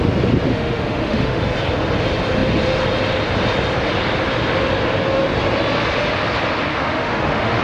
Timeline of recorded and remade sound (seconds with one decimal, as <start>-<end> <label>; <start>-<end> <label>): 0.0-0.5 recorded; 0.5-1.4 remade; 1.4-6.7 recorded; 6.7-7.6 remade